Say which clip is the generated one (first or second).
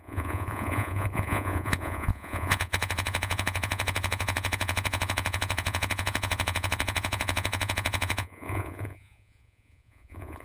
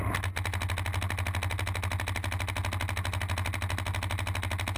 first